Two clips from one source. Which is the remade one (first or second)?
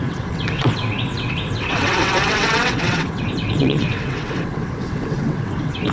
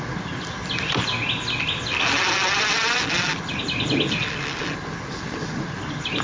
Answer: first